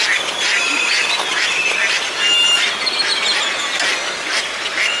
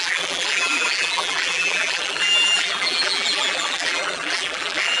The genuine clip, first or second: first